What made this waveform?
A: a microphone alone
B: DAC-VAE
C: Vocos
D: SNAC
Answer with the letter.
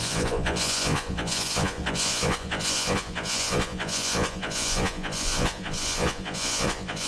C